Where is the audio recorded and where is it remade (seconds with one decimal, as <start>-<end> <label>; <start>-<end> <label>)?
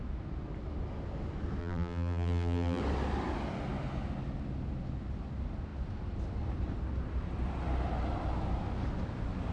0.0-1.6 recorded; 1.6-2.8 remade; 2.8-9.5 recorded